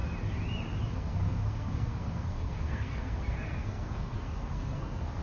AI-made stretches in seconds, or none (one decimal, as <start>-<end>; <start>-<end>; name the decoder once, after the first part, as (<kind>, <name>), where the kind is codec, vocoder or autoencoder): 0.9-5.2 (codec, SNAC)